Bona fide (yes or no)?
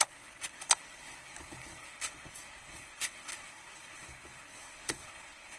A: no